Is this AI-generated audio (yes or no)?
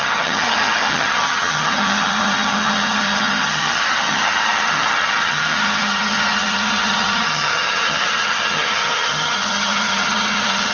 yes